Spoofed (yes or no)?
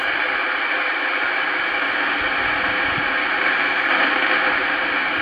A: no